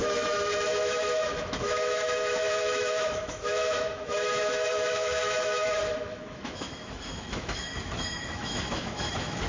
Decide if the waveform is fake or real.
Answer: fake